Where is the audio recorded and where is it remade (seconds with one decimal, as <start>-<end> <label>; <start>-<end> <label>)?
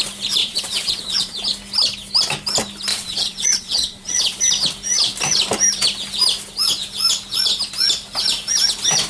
0.0-0.4 recorded; 0.4-1.4 remade; 1.4-2.9 recorded; 2.9-4.4 remade; 4.4-9.1 recorded